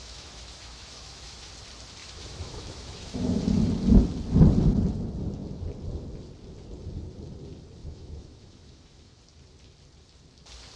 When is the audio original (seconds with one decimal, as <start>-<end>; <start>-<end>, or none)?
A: 1.5-2.0; 3.4-7.8; 9.2-10.8